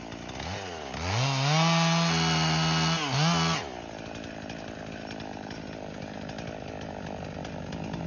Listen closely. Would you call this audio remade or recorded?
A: recorded